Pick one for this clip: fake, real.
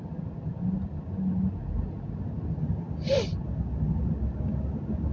real